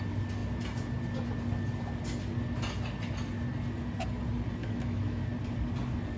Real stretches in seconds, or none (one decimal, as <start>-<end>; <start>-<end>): 0.0-4.6; 5.2-6.2

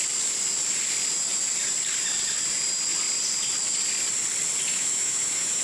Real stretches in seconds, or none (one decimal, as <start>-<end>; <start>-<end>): 0.0-4.7